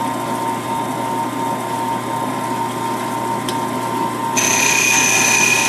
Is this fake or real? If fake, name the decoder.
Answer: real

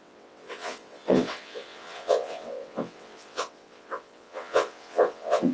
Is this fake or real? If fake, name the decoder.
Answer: fake, vocoder, WaveNeXt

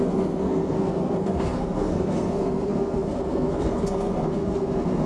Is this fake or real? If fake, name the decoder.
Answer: fake, codec, SNAC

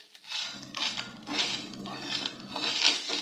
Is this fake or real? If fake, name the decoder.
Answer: real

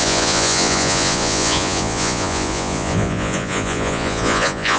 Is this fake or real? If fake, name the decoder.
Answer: fake, vocoder, Vocos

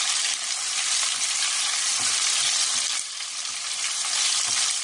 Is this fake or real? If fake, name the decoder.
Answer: real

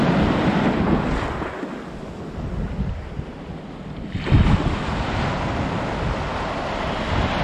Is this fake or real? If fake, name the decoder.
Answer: real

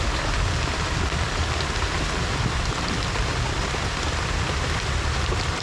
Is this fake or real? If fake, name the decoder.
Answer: fake, vocoder, BigVGAN v2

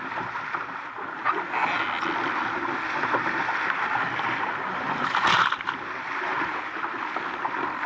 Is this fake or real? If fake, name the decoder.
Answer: real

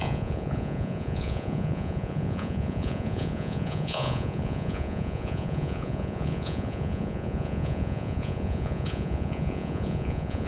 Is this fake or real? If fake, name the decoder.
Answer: fake, vocoder, Vocos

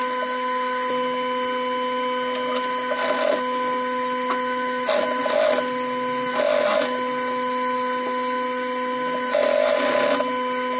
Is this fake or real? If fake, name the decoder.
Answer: real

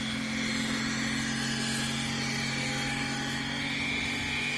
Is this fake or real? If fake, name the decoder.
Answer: real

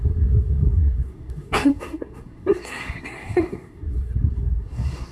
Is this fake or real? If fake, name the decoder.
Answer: fake, codec, SNAC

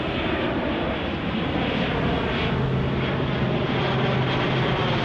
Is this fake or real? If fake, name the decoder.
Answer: real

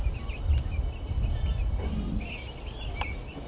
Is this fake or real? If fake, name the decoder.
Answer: real